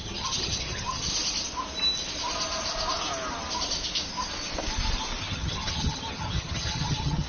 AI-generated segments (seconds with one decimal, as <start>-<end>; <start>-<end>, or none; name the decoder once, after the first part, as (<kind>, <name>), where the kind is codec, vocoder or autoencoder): 0.0-1.1 (vocoder, HiFi-GAN); 5.2-7.3